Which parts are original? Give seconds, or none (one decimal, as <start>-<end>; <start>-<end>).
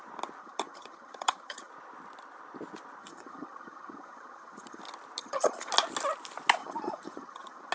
0.0-0.4; 1.7-3.0; 4.8-5.2; 5.7-6.6